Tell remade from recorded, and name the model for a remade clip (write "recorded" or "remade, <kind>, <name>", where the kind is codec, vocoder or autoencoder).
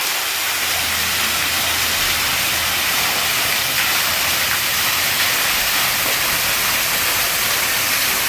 remade, vocoder, BigVGAN v2